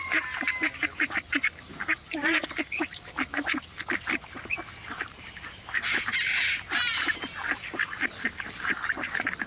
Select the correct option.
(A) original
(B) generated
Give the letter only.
A